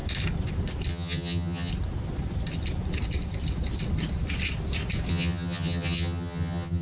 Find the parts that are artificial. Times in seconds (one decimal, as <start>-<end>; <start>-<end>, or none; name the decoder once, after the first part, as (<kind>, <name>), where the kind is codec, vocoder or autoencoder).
0.9-1.7 (vocoder, HiFi-GAN); 5.1-6.8